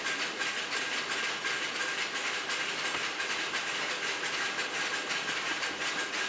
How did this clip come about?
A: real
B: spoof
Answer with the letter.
A